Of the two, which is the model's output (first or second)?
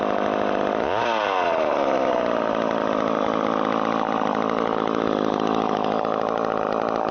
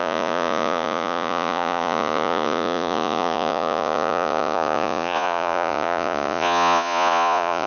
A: second